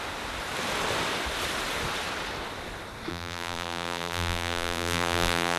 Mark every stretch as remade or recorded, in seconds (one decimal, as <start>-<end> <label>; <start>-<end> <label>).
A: 0.0-3.1 recorded; 3.1-5.6 remade